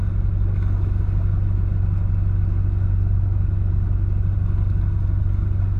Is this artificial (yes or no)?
no